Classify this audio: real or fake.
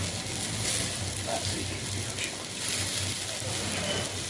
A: real